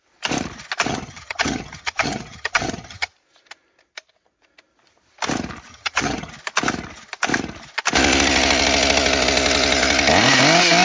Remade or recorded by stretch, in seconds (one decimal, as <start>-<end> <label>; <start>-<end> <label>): 0.0-0.9 recorded; 0.9-3.1 remade; 3.1-5.7 recorded; 5.7-6.3 remade; 6.3-10.8 recorded